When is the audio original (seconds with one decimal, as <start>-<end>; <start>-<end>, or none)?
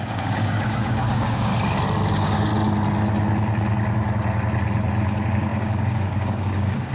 1.5-2.1; 2.5-5.0